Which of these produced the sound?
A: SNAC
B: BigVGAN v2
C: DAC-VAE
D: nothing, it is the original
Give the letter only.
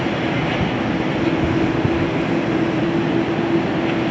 D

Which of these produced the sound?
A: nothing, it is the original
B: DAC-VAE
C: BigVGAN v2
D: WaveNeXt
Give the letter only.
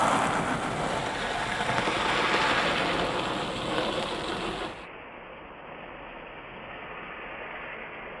A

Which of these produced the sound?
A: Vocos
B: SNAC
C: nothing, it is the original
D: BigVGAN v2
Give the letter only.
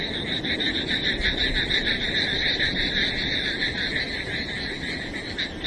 D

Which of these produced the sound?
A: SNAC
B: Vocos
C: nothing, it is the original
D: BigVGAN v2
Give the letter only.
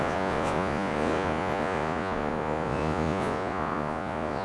B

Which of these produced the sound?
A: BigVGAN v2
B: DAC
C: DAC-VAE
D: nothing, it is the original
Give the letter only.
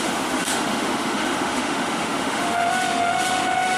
C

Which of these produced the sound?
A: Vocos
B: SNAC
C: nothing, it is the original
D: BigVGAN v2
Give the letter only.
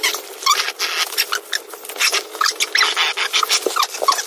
C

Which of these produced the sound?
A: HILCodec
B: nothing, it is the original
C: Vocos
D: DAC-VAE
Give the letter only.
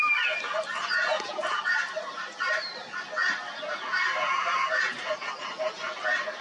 B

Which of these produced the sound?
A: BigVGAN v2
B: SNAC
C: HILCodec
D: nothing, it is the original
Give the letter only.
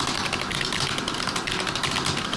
D